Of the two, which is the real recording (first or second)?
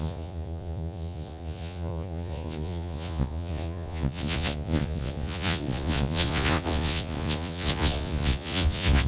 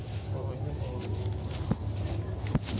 second